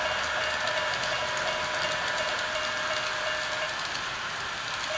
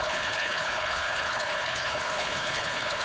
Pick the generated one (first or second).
second